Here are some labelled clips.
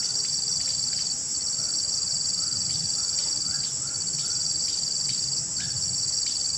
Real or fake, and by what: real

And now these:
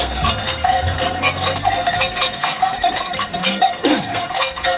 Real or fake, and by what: fake, codec, SNAC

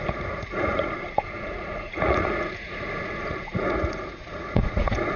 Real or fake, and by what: fake, vocoder, Vocos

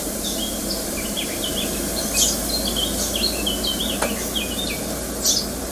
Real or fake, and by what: real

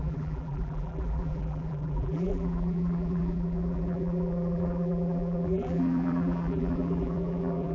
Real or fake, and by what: fake, vocoder, BigVGAN v2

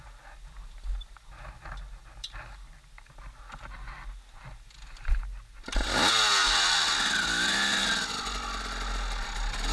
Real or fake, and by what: real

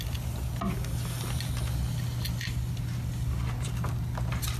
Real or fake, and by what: real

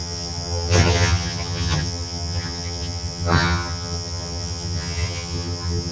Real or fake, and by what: fake, vocoder, HiFi-GAN